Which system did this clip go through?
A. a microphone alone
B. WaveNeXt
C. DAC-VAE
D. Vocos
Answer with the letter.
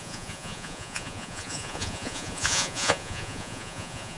D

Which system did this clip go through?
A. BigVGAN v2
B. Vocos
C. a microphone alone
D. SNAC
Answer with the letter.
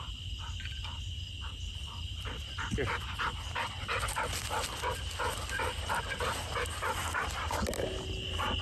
C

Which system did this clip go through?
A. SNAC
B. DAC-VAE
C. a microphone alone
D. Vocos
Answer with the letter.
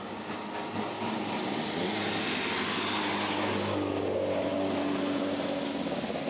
C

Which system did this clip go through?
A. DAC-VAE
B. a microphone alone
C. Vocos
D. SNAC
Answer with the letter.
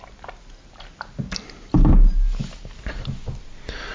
B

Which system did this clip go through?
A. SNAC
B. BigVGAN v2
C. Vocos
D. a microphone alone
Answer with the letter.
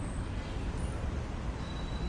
D